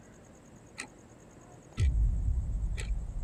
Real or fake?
real